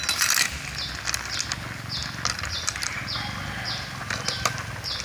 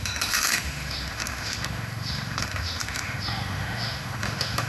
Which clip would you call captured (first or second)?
first